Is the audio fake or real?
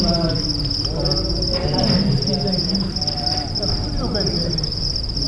fake